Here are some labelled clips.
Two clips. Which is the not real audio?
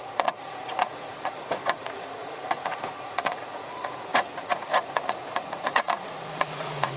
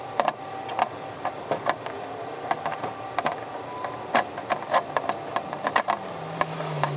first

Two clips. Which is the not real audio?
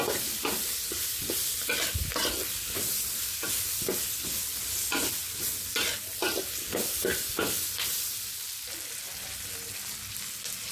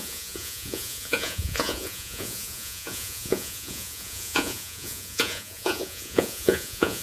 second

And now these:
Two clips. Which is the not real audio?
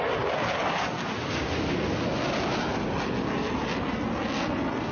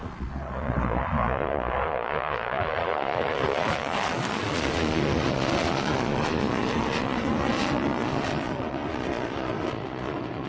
second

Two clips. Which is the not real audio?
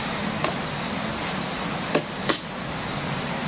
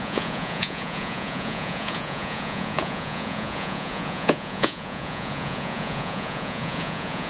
second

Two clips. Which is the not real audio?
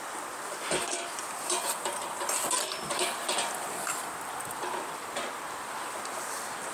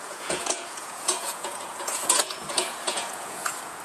second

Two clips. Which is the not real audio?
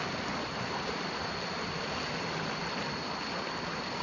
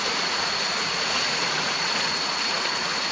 second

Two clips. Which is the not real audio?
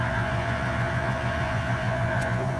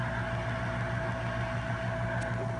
first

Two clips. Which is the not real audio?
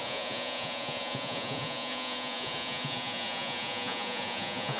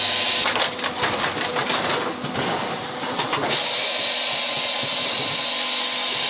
first